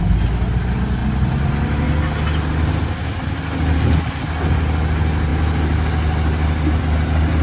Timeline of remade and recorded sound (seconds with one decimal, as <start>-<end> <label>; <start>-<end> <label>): 0.0-7.4 recorded